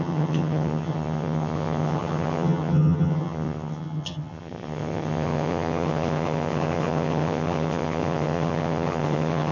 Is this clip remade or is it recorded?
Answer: remade